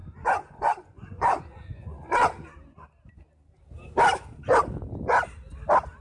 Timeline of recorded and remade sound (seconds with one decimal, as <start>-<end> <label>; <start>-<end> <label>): 0.0-2.2 remade; 2.2-6.0 recorded